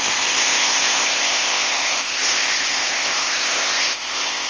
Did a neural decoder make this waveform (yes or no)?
yes